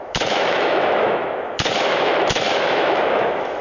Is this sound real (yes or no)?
no